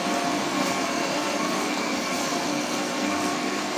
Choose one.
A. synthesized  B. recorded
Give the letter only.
A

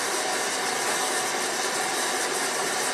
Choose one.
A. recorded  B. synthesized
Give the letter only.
A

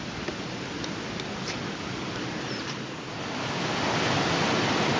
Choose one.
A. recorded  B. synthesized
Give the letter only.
A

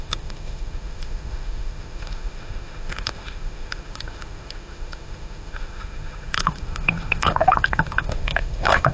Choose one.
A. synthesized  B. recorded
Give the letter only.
A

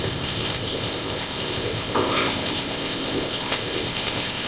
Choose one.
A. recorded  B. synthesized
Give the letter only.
B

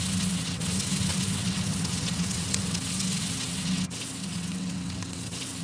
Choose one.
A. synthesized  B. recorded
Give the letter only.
A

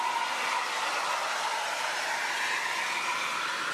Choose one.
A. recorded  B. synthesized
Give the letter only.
A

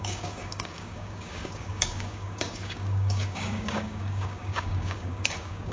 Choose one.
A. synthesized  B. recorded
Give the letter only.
A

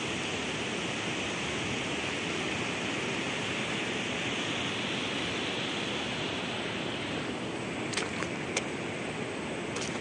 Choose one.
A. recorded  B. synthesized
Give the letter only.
A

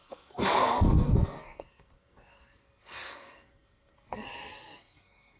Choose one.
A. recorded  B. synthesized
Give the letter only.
B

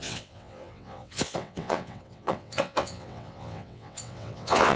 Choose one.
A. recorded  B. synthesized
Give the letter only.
B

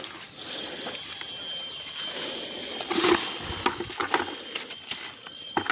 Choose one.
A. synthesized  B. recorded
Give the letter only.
B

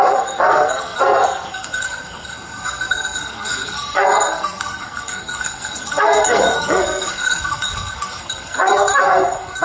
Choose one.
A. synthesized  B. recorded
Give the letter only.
A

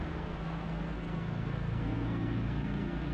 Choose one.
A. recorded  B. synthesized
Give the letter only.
B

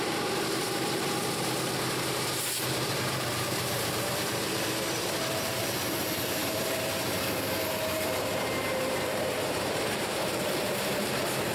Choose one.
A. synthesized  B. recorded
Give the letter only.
A